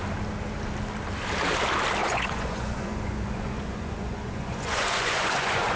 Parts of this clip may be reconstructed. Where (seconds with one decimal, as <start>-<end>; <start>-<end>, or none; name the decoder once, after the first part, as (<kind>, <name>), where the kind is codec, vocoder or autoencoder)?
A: 2.0-5.8 (vocoder, Vocos)